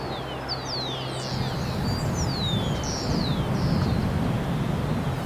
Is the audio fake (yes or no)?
no